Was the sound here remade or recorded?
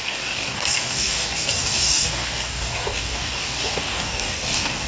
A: remade